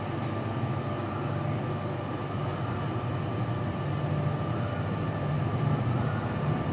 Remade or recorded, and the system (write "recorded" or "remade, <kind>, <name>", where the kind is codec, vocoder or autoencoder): recorded